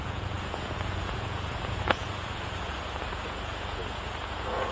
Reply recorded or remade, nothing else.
remade